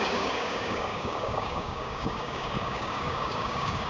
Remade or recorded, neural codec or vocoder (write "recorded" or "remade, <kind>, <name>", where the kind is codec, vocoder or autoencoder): remade, codec, DAC